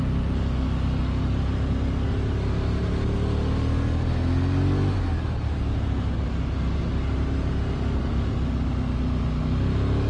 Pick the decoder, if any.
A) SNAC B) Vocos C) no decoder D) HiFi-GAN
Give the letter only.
C